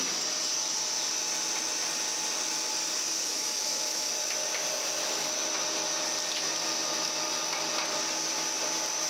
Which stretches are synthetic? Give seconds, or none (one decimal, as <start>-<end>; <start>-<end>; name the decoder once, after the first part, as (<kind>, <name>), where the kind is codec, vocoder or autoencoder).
3.3-4.1 (autoencoder, DAC-VAE)